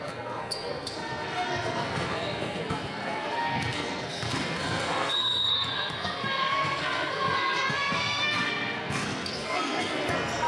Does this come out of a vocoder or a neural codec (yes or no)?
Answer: yes